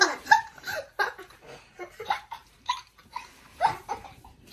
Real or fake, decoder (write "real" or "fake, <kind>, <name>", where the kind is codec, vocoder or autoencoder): fake, vocoder, BigVGAN v2